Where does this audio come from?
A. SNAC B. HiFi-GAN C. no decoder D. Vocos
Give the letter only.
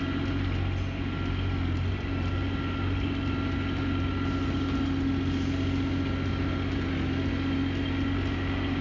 C